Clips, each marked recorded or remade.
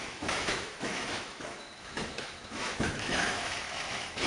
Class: remade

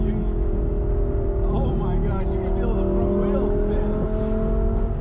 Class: recorded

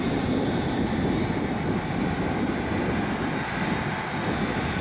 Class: recorded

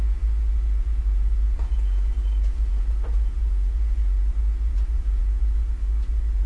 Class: remade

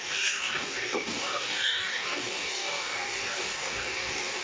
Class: remade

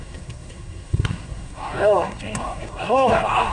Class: remade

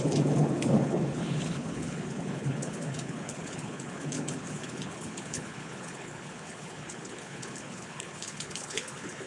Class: remade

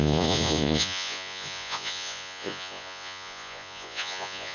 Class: remade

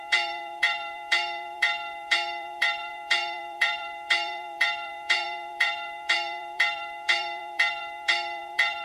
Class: remade